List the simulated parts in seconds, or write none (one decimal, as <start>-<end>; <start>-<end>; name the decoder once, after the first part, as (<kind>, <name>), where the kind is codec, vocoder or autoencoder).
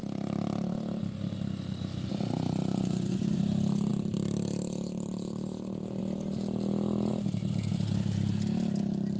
2.7-3.4 (vocoder, Vocos)